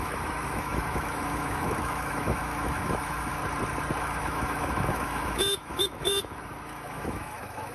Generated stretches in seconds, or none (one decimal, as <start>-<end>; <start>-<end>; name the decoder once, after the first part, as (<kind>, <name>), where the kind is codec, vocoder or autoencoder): 0.0-3.4 (autoencoder, DAC-VAE); 4.0-7.7